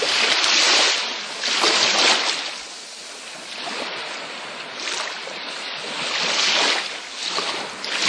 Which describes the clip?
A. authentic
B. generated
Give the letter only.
A